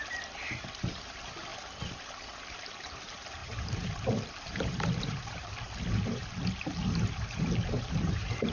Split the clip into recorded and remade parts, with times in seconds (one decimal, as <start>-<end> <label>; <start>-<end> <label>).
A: 0.0-1.5 remade; 1.5-2.8 recorded; 2.8-6.2 remade; 6.2-7.1 recorded; 7.1-8.5 remade